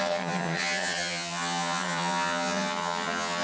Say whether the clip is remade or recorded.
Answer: remade